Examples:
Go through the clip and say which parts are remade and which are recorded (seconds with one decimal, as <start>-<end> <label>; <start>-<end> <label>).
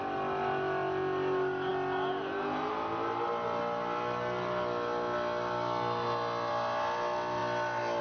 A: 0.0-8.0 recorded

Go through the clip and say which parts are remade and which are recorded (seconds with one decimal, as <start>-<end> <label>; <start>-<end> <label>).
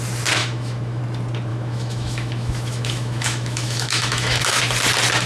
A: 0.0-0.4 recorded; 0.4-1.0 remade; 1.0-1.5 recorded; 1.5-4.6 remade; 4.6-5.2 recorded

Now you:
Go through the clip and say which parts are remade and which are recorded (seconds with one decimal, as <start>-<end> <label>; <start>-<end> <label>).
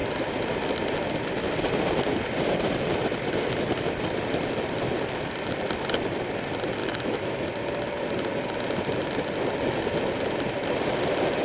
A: 0.0-6.8 recorded; 6.8-7.4 remade; 7.4-11.4 recorded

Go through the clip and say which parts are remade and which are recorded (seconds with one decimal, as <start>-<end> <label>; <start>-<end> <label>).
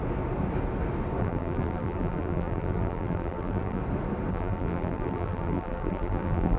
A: 0.0-1.2 recorded; 1.2-3.8 remade; 3.8-4.3 recorded; 4.3-6.6 remade